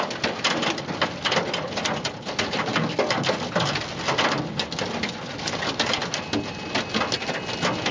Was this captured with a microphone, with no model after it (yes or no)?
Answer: yes